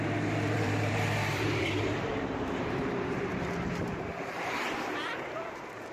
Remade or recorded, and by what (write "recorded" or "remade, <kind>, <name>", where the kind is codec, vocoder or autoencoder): remade, vocoder, BigVGAN v2